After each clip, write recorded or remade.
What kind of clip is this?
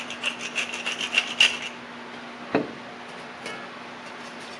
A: recorded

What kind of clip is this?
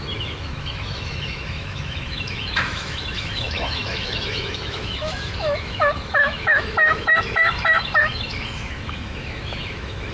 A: remade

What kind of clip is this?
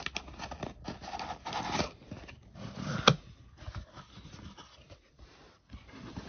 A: recorded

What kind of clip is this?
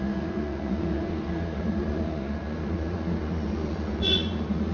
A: remade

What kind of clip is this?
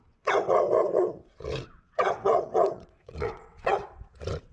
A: remade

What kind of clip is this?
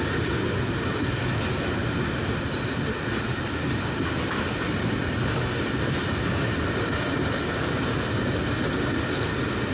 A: recorded